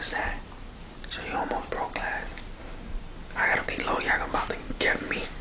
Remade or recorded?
recorded